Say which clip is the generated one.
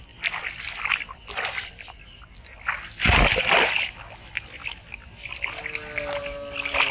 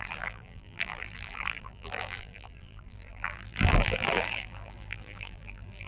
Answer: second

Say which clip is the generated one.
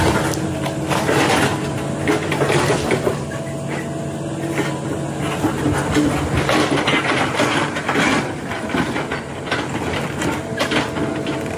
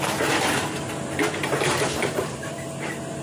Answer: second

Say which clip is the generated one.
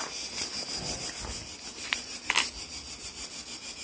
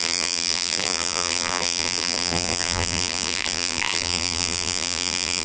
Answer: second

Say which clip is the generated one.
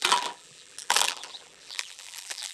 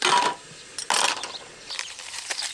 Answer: first